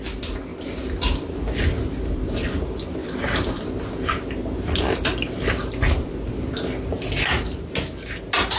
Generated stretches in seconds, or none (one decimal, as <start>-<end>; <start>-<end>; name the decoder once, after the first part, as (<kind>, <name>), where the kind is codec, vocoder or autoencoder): none